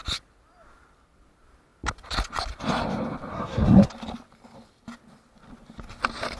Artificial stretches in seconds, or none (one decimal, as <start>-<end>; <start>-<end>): 3.3-3.9